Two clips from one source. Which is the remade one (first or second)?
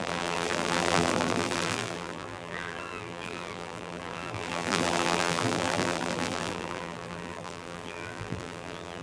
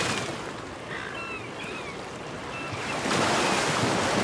first